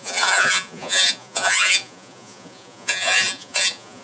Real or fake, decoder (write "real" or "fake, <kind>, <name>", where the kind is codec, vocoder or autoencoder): fake, vocoder, Vocos